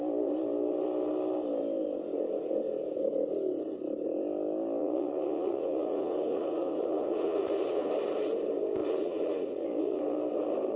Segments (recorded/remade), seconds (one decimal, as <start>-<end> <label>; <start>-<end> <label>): 0.0-4.8 recorded; 4.8-7.9 remade; 7.9-8.8 recorded; 8.8-10.0 remade; 10.0-10.8 recorded